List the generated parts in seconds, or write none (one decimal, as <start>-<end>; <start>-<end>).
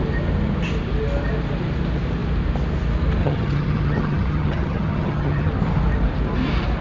3.2-5.5